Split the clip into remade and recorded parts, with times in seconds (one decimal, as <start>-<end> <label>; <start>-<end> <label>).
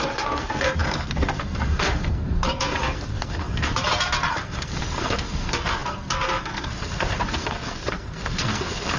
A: 0.0-3.7 remade; 3.7-4.3 recorded; 4.3-9.0 remade